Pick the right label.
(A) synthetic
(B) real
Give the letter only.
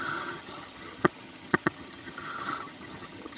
A